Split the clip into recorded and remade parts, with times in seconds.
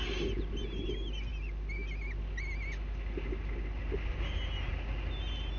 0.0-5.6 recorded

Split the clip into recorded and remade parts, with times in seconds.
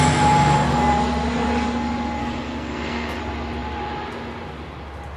0.0-2.2 recorded; 2.2-3.2 remade; 3.2-5.2 recorded